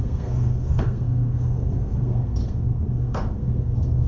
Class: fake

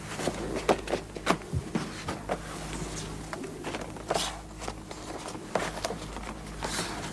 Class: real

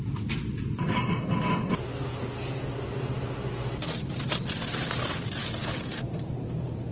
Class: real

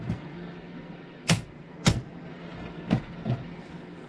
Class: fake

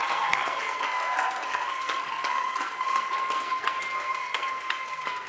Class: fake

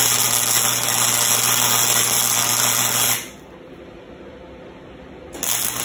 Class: real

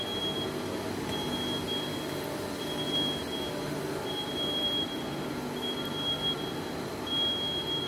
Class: real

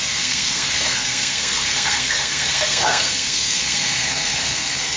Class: fake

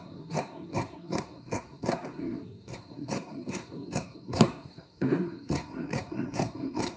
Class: fake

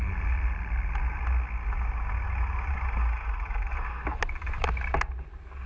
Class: real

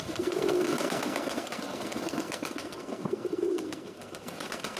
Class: fake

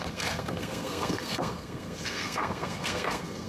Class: fake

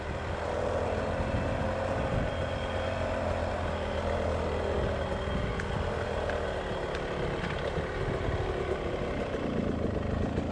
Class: real